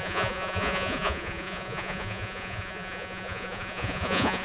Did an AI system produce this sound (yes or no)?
yes